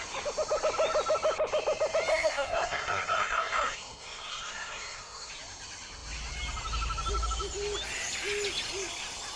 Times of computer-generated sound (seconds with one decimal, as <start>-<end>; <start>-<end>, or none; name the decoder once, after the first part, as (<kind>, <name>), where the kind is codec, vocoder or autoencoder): 2.1-5.3 (codec, SNAC)